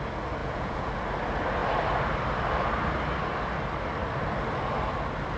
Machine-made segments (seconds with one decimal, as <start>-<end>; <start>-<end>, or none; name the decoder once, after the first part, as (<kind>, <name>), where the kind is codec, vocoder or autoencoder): 0.4-0.9 (vocoder, Vocos)